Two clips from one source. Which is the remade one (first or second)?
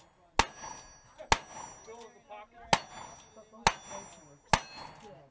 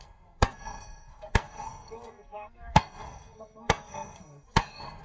second